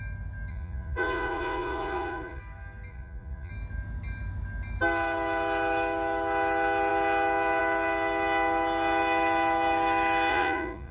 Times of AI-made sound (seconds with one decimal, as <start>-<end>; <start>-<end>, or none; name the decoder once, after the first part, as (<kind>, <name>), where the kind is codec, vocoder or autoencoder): 0.5-2.4 (vocoder, Vocos); 2.9-3.5; 10.3-10.9